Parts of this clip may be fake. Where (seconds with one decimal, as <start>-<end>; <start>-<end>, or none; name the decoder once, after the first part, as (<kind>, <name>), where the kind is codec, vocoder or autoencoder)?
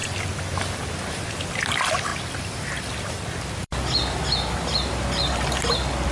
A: 1.1-2.1 (vocoder, BigVGAN v2); 2.8-6.1